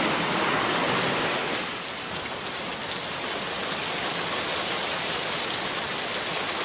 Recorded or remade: recorded